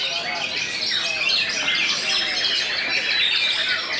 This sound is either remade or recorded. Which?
recorded